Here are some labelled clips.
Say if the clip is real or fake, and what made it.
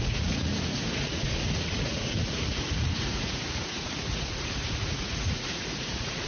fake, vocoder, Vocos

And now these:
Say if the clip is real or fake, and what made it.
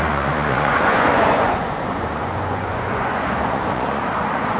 fake, vocoder, Vocos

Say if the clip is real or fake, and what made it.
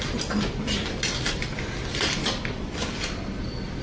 real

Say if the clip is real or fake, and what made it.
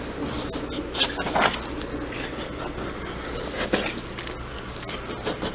real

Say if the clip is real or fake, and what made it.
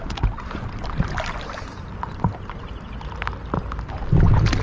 real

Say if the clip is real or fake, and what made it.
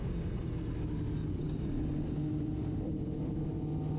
real